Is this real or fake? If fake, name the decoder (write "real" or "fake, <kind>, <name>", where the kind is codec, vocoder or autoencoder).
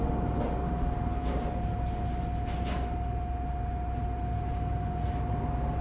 real